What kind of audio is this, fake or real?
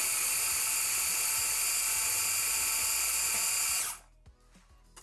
real